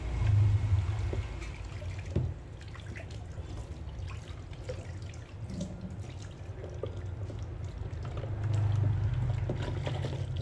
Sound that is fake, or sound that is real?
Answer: real